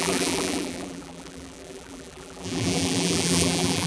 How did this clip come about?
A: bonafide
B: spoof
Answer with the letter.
B